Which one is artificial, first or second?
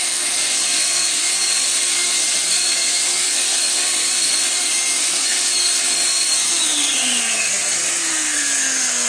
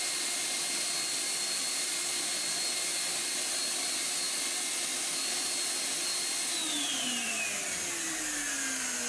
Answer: first